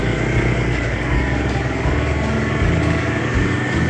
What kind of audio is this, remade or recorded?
remade